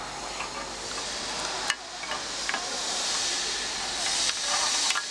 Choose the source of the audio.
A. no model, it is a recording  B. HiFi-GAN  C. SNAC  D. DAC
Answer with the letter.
A